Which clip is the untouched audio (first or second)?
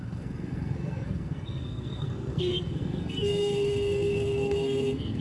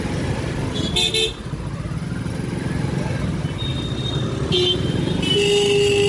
second